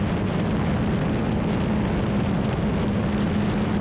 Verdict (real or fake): real